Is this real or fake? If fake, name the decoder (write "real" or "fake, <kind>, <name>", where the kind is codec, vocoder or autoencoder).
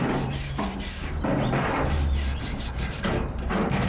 fake, vocoder, BigVGAN v2